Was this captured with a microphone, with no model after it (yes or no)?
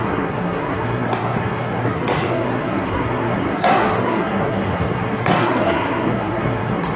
no